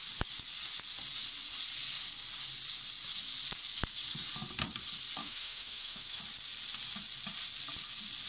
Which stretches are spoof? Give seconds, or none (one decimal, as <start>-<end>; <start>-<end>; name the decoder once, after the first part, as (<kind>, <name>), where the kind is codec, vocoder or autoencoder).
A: 5.2-6.2 (autoencoder, DAC-VAE)